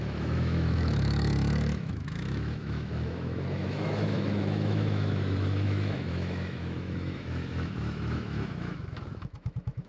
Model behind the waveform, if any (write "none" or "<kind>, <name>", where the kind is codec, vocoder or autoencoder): autoencoder, DAC-VAE